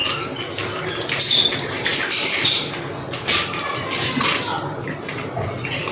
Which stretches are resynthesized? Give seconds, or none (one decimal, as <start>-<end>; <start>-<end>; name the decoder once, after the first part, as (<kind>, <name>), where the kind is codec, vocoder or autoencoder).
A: 0.5-1.9 (vocoder, BigVGAN v2); 5.0-5.9